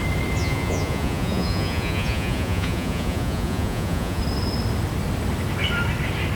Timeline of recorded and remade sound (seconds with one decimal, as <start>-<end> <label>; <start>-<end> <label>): 0.0-0.4 recorded; 0.4-4.2 remade; 4.2-6.4 recorded